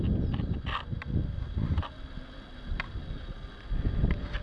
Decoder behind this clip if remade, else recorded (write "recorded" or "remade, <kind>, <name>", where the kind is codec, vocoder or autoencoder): recorded